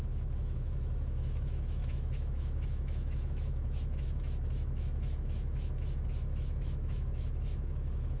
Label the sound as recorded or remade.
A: remade